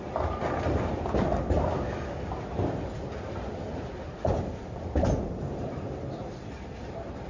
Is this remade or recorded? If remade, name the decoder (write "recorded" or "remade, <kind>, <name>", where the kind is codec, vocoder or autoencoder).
recorded